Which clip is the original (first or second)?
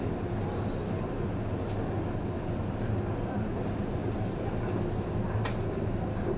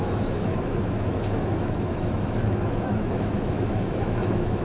first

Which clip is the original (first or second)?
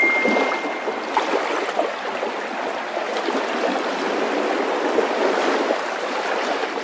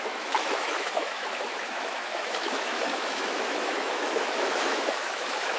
first